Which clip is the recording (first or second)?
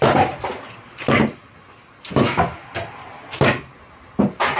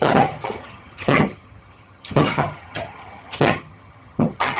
first